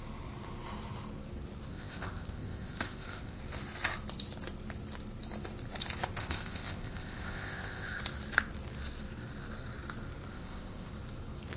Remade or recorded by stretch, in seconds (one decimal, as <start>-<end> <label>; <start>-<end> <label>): 0.0-1.7 recorded; 1.7-3.4 remade; 3.4-6.2 recorded; 6.2-8.0 remade; 8.0-10.3 recorded; 10.3-10.9 remade; 10.9-11.6 recorded